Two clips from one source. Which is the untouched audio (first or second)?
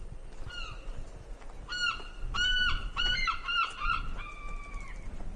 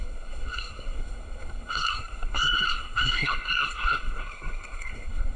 first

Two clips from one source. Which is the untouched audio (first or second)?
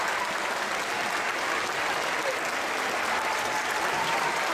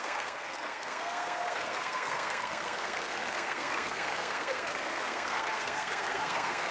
first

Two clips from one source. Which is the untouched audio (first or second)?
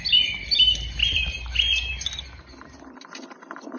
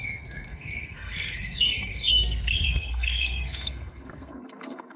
first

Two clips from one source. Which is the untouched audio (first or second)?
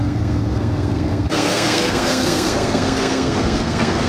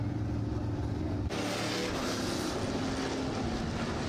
second